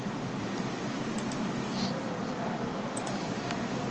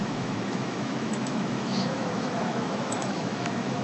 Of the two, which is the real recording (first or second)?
first